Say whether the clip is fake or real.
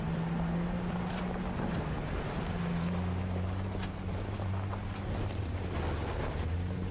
real